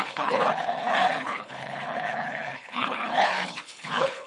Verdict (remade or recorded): remade